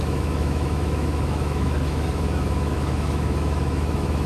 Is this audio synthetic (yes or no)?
yes